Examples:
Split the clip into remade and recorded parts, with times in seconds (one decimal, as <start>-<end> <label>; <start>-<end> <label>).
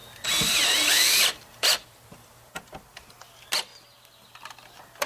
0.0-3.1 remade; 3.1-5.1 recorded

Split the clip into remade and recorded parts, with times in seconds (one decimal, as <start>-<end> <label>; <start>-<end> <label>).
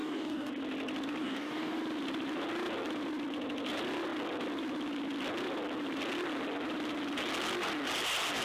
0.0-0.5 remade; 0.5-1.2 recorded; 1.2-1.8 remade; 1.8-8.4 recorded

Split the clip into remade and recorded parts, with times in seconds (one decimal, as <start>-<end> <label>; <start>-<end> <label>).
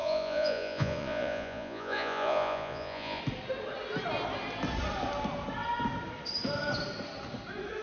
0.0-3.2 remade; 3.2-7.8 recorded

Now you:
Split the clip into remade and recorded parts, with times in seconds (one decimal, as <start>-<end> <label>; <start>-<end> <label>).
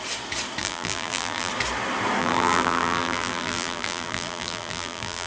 0.0-0.6 recorded; 0.6-1.5 remade; 1.5-2.2 recorded; 2.2-5.3 remade